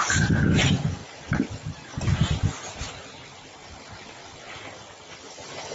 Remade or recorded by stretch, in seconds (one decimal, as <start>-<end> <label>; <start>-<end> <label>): 0.0-5.7 recorded